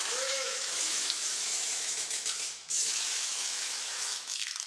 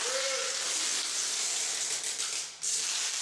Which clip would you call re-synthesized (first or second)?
first